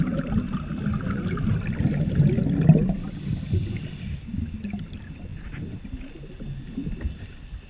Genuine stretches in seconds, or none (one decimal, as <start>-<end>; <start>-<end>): 0.0-7.7